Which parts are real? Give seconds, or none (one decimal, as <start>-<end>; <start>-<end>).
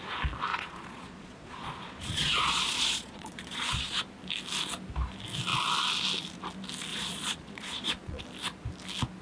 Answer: 0.0-0.5; 4.0-6.9; 8.2-9.2